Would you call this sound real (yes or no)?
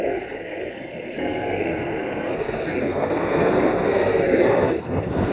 no